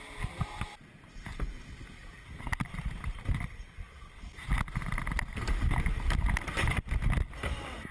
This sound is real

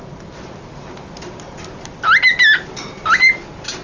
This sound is real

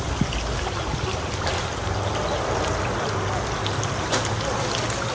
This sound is real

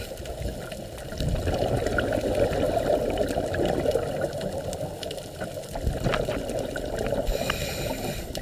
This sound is real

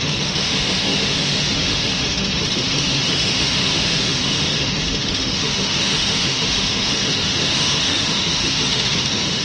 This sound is fake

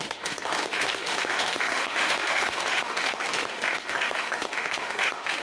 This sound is fake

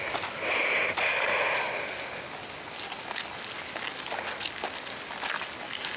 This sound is real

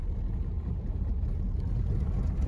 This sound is real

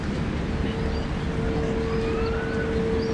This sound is real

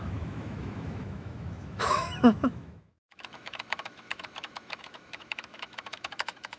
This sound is fake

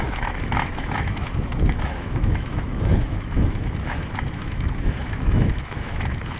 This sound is fake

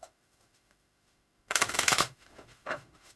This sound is fake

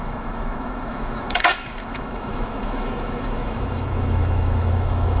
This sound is fake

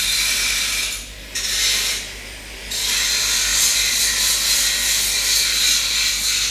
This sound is real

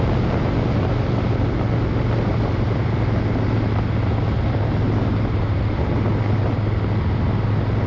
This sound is real